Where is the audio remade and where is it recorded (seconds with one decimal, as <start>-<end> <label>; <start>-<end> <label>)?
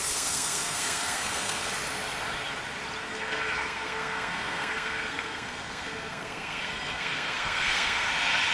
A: 0.0-1.7 remade; 1.7-3.1 recorded; 3.1-8.1 remade; 8.1-8.5 recorded